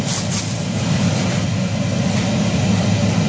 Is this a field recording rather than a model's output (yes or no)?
yes